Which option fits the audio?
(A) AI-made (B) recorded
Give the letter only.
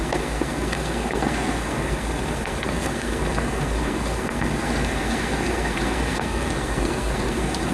A